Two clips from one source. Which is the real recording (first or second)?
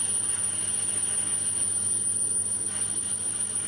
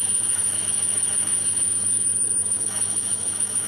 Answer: first